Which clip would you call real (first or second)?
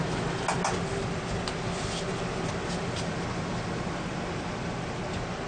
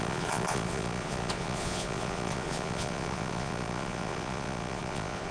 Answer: first